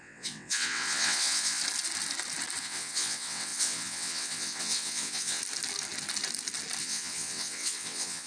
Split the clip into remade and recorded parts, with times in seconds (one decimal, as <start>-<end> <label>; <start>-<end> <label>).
0.0-1.6 remade; 1.6-2.6 recorded; 2.6-5.4 remade; 5.4-6.8 recorded; 6.8-8.3 remade